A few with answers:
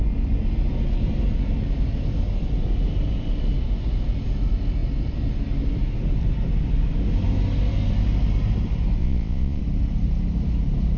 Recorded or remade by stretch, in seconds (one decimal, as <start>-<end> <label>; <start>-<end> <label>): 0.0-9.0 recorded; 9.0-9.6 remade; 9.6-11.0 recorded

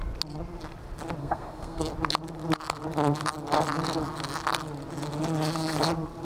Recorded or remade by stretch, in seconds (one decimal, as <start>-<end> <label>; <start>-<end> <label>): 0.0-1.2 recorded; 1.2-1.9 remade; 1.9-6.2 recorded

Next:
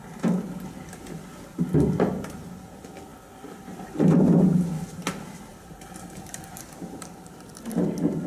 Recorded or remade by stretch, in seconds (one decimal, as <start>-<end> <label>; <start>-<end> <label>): 0.0-5.5 recorded; 5.5-7.5 remade; 7.5-8.3 recorded

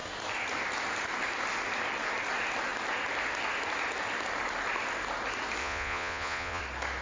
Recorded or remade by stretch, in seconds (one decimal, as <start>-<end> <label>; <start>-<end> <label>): 0.0-5.6 recorded; 5.6-6.6 remade; 6.6-7.0 recorded

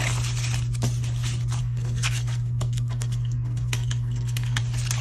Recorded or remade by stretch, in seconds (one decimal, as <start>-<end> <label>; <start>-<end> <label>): 0.0-1.6 recorded; 1.6-4.6 remade; 4.6-5.0 recorded

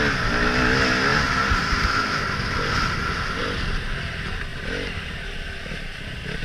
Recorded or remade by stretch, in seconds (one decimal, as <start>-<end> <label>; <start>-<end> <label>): 0.0-6.4 recorded